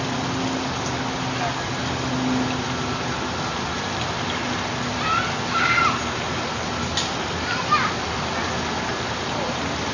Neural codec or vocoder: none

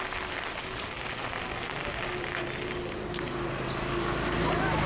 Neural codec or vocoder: none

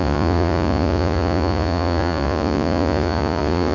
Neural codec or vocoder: vocoder, Vocos